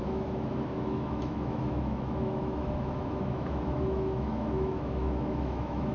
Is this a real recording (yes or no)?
no